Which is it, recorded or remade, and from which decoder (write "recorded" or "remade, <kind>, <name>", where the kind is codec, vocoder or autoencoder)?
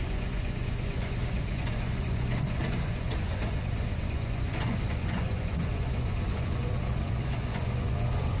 remade, vocoder, Vocos